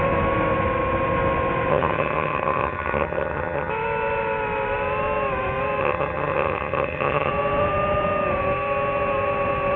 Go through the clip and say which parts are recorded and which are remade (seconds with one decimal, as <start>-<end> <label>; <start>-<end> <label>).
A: 0.0-1.7 recorded; 1.7-3.7 remade; 3.7-5.8 recorded; 5.8-7.3 remade; 7.3-9.8 recorded